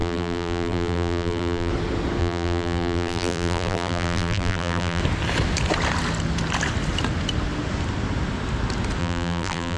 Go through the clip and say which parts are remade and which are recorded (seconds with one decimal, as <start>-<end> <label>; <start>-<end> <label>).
0.0-1.7 remade; 1.7-2.2 recorded; 2.2-5.0 remade; 5.0-9.0 recorded; 9.0-9.8 remade